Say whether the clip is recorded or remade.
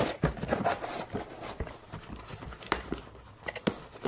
recorded